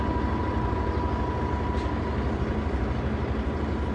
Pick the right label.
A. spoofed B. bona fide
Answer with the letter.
B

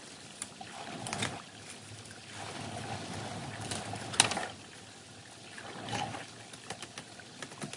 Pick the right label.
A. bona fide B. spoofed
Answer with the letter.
A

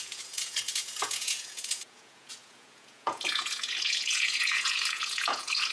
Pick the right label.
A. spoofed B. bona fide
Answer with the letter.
A